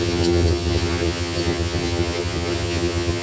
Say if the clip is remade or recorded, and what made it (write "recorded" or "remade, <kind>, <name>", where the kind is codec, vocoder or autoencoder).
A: remade, vocoder, HiFi-GAN